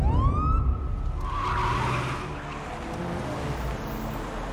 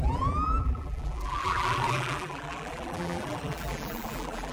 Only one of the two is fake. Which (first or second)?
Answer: second